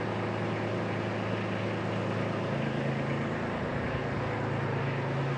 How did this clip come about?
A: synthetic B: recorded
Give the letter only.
B